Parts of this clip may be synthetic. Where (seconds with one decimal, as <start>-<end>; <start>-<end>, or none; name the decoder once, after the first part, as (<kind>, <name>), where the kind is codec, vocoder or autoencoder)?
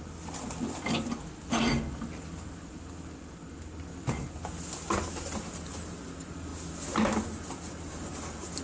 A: none